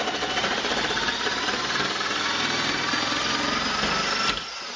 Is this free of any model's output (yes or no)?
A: yes